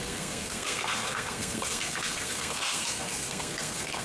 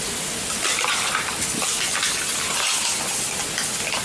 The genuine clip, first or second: second